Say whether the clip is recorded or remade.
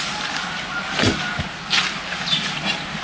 recorded